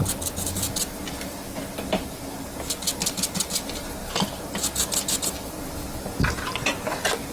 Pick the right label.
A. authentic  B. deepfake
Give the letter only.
A